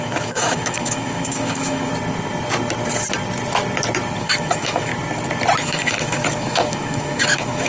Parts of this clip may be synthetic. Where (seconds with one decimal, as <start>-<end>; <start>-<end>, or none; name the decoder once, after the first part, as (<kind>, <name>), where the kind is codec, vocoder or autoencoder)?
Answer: 0.0-1.9 (autoencoder, DAC-VAE); 4.2-4.9; 5.6-7.7